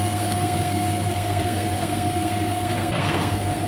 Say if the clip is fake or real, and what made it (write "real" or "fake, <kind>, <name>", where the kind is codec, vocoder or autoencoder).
fake, codec, SNAC